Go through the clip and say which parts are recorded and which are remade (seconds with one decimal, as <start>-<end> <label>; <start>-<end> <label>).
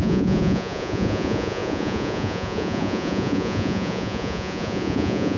0.0-5.4 remade